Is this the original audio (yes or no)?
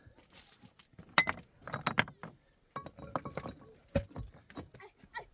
yes